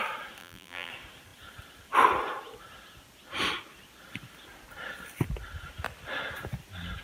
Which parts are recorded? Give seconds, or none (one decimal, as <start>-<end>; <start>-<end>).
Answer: 0.0-0.4; 0.9-7.0